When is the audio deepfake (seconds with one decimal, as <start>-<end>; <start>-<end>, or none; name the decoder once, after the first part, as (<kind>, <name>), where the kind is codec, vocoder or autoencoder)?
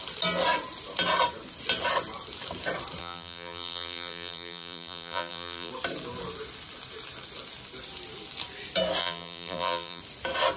3.0-5.7 (vocoder, BigVGAN v2); 9.0-10.0